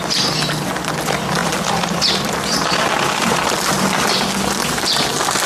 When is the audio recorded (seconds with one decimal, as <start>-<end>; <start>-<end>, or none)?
0.0-1.4; 4.1-5.5

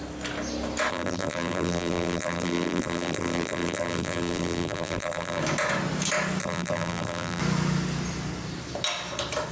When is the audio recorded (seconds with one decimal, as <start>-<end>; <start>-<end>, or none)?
0.0-0.9; 5.4-6.4; 7.4-9.5

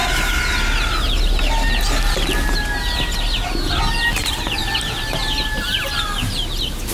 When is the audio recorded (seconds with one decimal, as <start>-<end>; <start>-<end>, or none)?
0.0-6.9

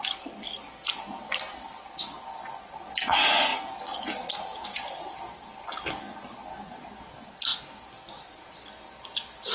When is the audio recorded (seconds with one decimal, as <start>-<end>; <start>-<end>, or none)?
0.0-9.5